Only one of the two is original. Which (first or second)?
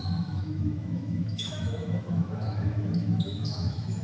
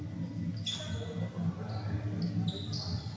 second